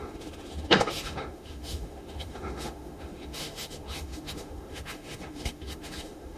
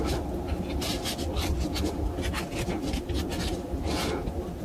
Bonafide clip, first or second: second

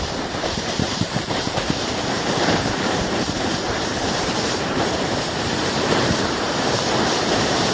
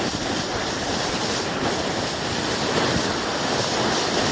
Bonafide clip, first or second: second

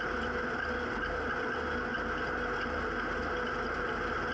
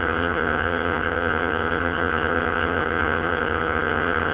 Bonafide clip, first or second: first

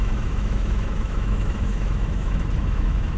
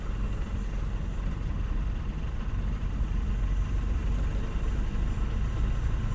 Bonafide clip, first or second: second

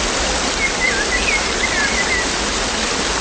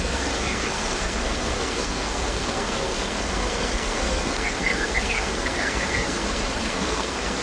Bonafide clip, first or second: first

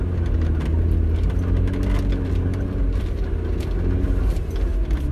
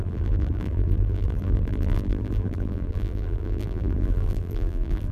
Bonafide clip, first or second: first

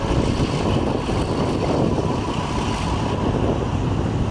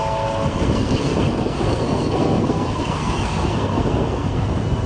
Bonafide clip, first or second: first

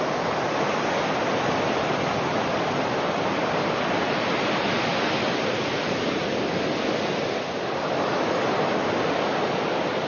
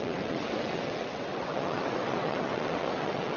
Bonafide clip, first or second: first